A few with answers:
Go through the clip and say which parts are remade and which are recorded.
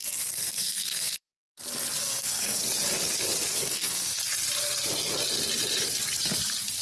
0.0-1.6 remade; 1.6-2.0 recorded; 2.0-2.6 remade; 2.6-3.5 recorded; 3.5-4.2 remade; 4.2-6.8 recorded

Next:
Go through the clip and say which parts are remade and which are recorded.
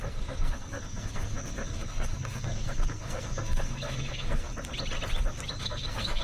0.0-4.5 remade; 4.5-5.6 recorded; 5.6-6.2 remade